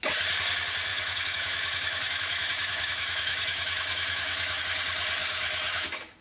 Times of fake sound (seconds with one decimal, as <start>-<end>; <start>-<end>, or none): 0.9-4.6; 5.2-6.2